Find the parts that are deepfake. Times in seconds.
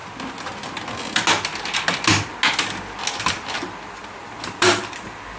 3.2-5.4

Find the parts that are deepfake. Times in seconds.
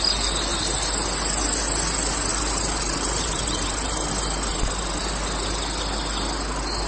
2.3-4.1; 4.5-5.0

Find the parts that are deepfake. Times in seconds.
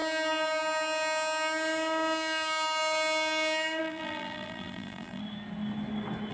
3.8-5.2